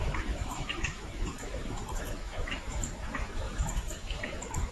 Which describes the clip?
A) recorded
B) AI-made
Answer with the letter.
B